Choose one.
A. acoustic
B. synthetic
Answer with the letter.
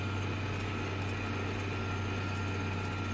A